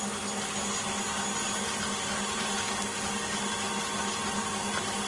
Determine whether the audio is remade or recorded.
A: recorded